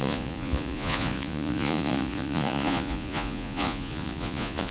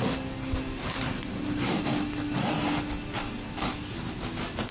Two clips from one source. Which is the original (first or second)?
second